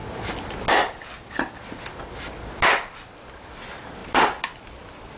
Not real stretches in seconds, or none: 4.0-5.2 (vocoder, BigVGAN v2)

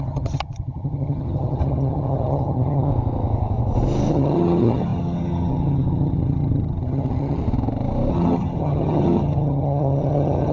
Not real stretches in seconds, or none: 0.0-2.9 (vocoder, HiFi-GAN); 4.1-7.4; 8.1-10.5